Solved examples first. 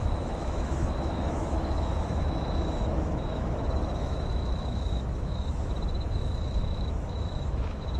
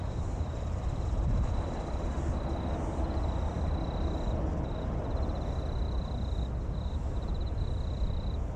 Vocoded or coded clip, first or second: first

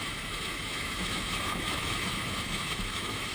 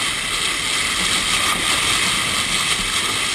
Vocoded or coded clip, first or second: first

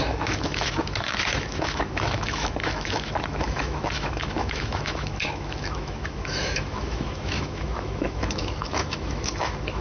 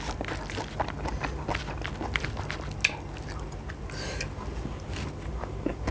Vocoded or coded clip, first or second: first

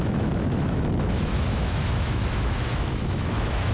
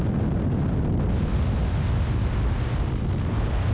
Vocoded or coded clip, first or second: first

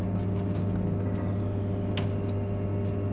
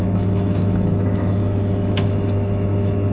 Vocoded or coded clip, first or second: second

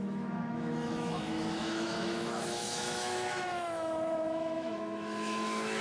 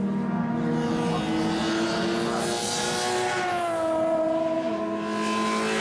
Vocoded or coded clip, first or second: first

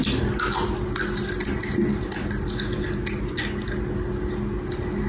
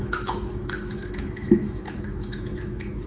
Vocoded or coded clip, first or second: second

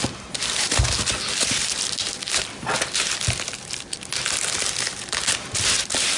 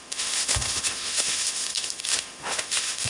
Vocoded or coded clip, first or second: second